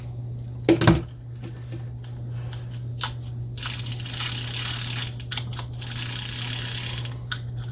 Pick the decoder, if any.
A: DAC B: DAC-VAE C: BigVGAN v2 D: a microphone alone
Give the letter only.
D